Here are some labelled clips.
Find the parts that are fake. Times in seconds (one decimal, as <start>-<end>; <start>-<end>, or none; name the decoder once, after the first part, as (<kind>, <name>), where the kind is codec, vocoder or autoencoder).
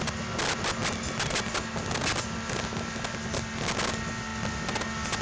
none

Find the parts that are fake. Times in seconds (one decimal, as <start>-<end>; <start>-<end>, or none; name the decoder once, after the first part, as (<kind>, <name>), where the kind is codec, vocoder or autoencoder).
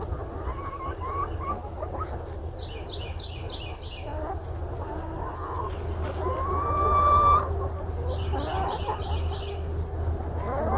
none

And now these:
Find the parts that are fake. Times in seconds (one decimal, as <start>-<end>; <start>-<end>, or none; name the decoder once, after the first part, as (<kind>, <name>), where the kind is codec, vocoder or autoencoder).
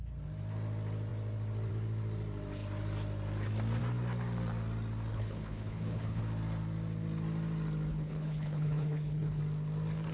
5.1-6.2 (codec, HILCodec); 7.9-9.4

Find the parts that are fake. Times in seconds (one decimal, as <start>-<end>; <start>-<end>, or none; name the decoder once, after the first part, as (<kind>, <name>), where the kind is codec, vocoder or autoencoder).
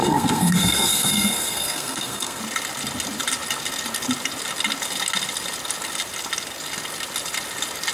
0.0-2.4 (codec, SNAC)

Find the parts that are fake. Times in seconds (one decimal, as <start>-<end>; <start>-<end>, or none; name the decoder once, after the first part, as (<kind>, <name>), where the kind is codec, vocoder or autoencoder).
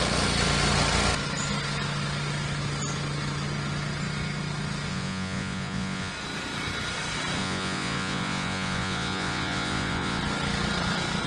4.9-6.1 (vocoder, Vocos); 7.4-10.2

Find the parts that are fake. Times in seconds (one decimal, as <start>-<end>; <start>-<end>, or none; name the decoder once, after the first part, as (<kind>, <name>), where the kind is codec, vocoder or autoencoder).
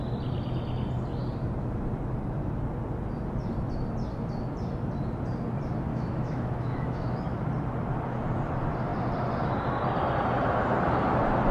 5.9-7.5 (autoencoder, DAC-VAE)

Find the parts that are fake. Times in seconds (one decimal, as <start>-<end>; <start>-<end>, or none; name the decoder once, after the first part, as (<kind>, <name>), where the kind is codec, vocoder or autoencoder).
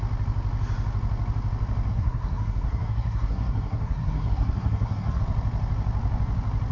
1.9-5.2 (codec, SNAC)